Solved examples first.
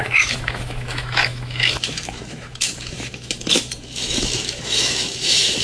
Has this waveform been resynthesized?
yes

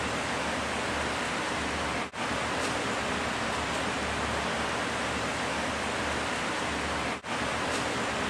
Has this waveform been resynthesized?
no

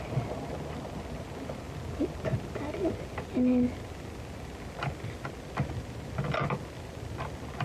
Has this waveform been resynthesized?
no